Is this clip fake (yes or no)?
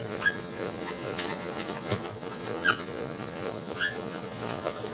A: yes